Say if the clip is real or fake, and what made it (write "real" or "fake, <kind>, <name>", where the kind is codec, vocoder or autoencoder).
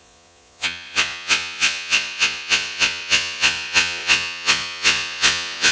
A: fake, vocoder, Vocos